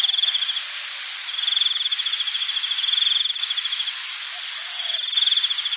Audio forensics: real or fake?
real